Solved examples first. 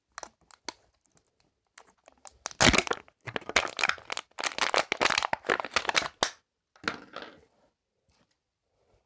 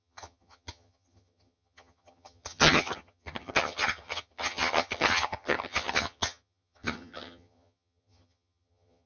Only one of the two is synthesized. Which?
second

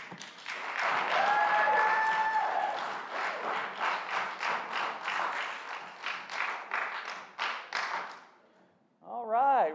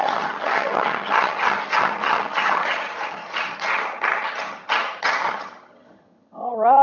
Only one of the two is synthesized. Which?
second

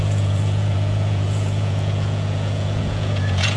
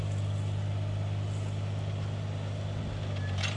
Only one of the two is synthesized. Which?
first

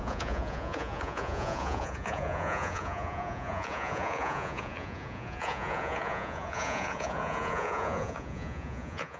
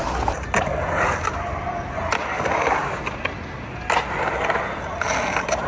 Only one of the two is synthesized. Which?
first